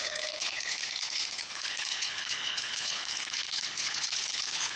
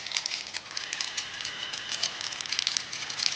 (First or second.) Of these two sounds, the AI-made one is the first